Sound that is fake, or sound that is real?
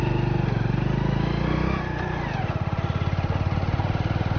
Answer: real